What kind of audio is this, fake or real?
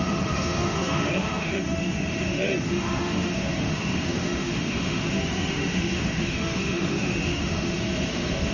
fake